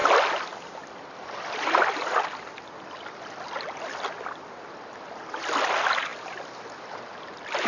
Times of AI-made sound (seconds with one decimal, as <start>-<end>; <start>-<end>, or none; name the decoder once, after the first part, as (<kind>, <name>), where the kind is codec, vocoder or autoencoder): none